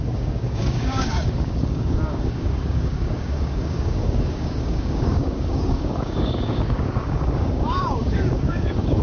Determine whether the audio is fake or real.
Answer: fake